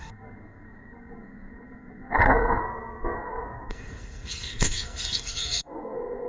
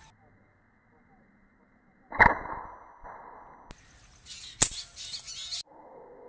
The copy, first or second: first